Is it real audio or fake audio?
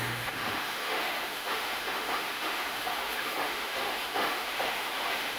fake